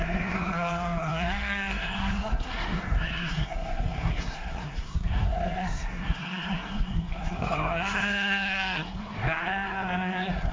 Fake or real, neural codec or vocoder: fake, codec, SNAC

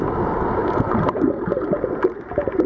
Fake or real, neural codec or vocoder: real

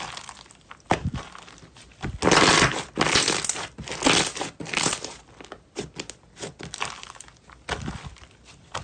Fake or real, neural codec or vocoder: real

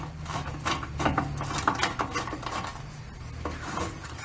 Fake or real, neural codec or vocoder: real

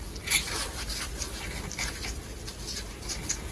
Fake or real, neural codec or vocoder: real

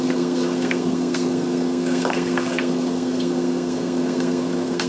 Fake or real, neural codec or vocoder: fake, codec, SNAC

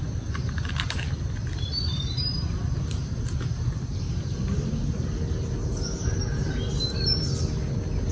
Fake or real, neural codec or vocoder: real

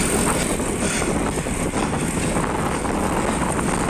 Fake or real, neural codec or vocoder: real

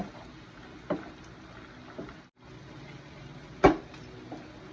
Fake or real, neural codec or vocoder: real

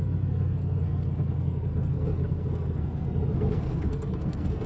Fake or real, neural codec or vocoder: fake, codec, SNAC